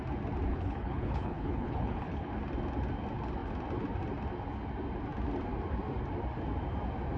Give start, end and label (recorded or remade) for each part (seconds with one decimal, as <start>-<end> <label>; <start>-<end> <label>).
0.0-0.5 recorded; 0.5-2.3 remade; 2.3-7.2 recorded